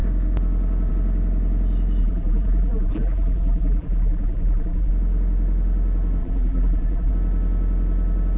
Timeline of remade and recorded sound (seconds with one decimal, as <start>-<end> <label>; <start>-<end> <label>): 0.0-2.0 recorded; 2.0-4.9 remade; 4.9-6.2 recorded; 6.2-7.1 remade; 7.1-8.4 recorded